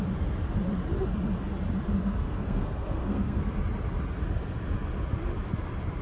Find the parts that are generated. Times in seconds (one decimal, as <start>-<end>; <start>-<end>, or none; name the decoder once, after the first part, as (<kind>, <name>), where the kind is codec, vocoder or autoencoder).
2.0-3.5 (codec, SNAC)